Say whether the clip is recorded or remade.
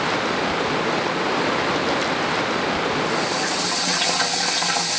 recorded